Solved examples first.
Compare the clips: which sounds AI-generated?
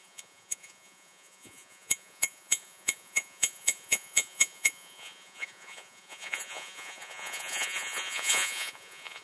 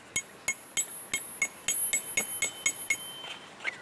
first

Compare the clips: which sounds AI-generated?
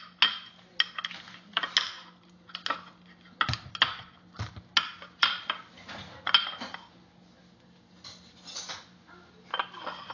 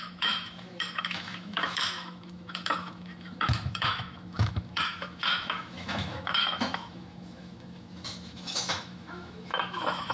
second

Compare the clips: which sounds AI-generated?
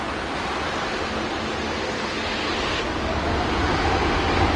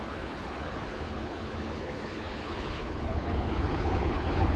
second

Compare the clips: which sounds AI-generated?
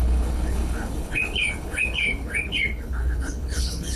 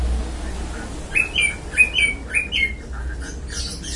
first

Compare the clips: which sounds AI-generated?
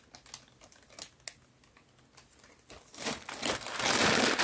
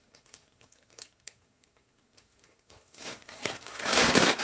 second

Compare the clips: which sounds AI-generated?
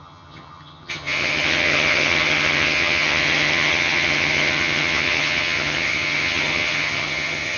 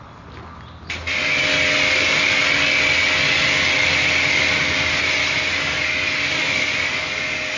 first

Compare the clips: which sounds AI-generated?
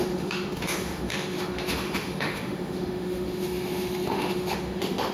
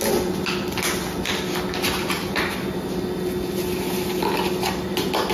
first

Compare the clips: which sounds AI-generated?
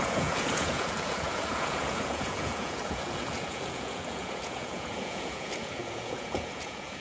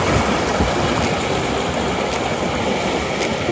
first